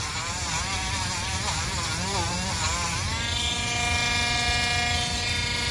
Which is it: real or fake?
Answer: real